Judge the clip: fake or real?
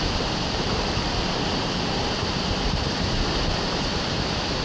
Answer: fake